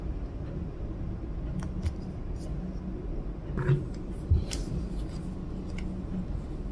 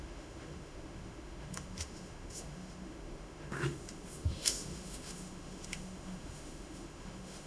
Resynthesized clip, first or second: second